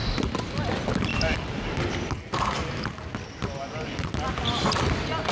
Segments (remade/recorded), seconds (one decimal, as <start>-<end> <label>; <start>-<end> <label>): 0.0-5.3 recorded